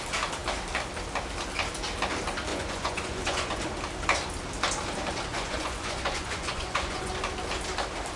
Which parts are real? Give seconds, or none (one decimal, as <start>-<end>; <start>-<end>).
0.0-2.5; 3.6-5.3; 7.1-8.2